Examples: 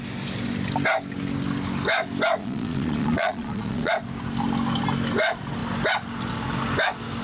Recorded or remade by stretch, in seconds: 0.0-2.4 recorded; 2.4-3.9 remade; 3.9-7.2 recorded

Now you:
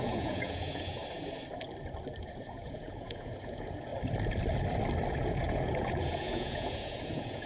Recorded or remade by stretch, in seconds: 0.0-1.0 remade; 1.0-2.2 recorded; 2.2-3.9 remade; 3.9-5.2 recorded; 5.2-7.5 remade

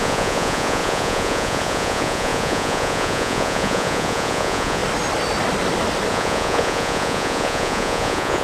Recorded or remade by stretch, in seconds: 0.0-4.8 remade; 4.8-6.1 recorded; 6.1-8.4 remade

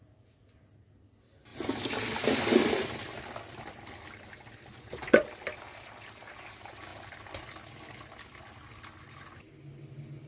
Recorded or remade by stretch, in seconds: 0.0-4.7 recorded; 4.7-5.2 remade; 5.2-10.3 recorded

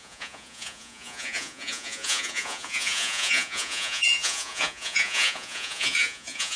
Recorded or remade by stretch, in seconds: 0.0-6.6 remade

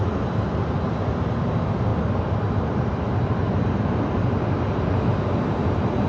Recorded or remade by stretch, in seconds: 0.0-6.1 recorded

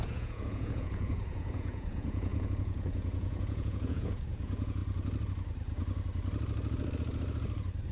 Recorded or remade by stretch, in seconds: 0.0-4.8 remade; 4.8-7.9 recorded